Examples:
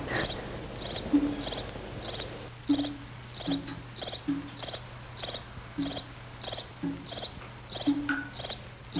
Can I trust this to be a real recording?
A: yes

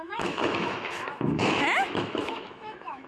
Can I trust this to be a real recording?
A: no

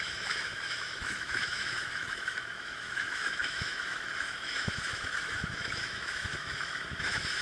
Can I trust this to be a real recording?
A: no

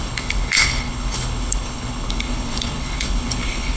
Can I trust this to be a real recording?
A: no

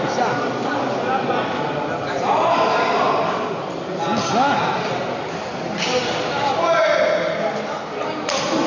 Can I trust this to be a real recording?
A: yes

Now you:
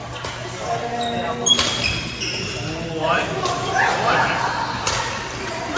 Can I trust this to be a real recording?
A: yes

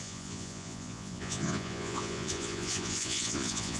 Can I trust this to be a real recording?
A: no